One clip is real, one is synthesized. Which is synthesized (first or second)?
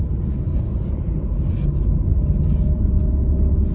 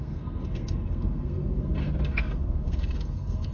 second